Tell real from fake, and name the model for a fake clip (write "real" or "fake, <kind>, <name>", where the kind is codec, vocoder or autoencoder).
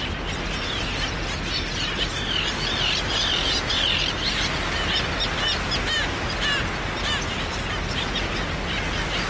real